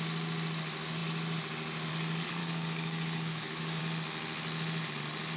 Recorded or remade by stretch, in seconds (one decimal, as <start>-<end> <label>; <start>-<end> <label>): 0.0-2.4 recorded; 2.4-3.8 remade; 3.8-5.4 recorded